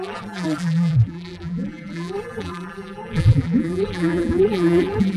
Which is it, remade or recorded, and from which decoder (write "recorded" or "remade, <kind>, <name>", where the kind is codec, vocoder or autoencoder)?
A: remade, vocoder, BigVGAN v2